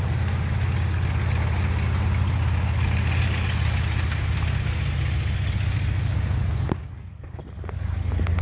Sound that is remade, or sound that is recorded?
recorded